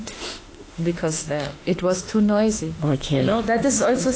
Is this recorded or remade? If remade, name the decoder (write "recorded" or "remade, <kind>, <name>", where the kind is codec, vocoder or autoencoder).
remade, autoencoder, DAC-VAE